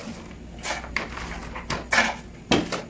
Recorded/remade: recorded